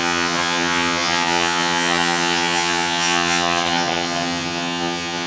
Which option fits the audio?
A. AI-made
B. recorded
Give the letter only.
A